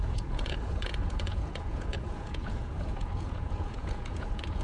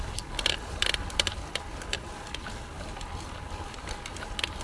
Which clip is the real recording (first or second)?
second